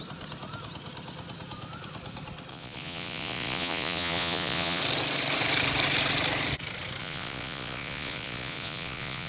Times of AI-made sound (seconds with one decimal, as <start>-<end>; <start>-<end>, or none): 2.5-4.8; 7.0-9.3